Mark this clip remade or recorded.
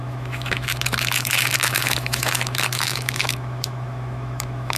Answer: remade